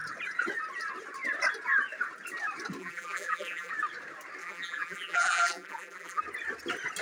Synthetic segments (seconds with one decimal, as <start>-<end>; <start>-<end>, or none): 2.8-3.7; 4.4-6.2